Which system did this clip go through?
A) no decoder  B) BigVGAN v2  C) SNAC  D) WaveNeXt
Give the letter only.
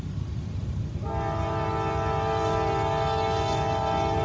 A